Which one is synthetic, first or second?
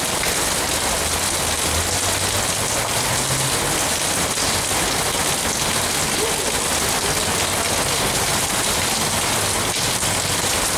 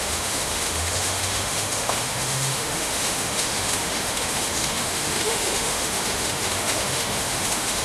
second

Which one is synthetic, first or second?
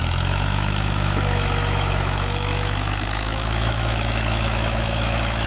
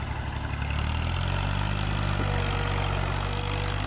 first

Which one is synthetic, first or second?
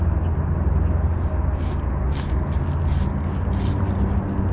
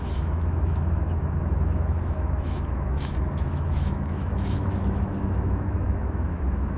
second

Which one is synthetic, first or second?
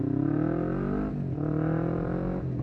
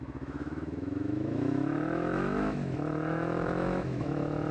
second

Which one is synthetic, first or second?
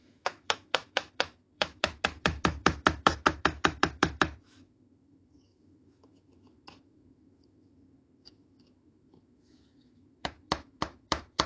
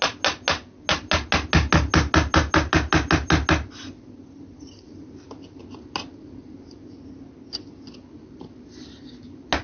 first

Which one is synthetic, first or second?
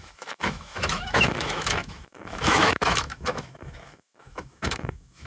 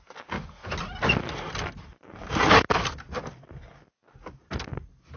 first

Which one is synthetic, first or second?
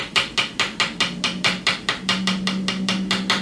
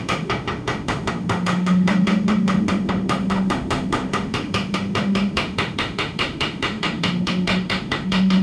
second